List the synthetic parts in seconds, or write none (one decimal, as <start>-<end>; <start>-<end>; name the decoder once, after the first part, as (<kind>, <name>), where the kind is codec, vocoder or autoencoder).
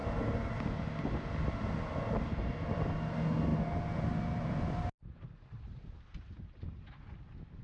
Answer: none